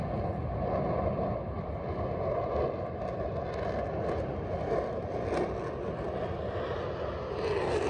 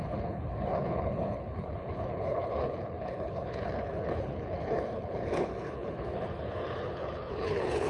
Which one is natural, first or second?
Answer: first